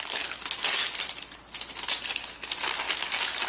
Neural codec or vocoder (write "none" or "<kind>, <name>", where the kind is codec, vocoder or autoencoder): none